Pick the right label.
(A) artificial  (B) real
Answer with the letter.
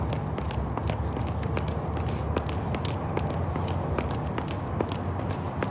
B